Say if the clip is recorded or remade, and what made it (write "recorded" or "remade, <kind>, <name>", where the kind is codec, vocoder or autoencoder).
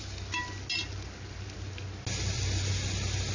recorded